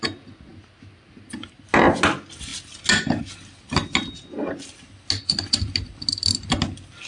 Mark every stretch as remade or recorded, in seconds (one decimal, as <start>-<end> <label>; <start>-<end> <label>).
0.0-7.1 recorded